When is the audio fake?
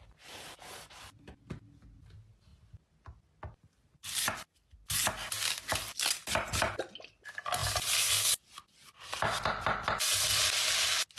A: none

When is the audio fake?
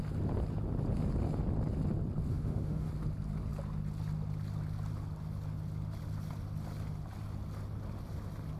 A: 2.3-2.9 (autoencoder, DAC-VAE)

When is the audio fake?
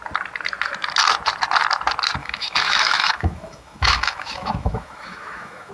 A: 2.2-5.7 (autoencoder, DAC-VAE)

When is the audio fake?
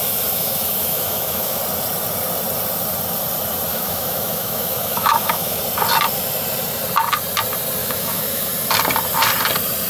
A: 0.0-1.6 (autoencoder, DAC-VAE); 3.7-5.6; 7.8-8.5